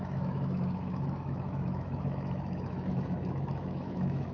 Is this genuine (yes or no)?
no